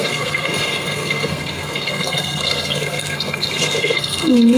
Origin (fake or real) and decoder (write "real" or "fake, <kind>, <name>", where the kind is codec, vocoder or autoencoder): fake, codec, SNAC